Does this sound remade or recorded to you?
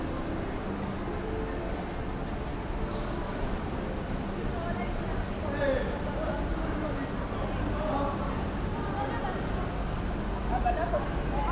recorded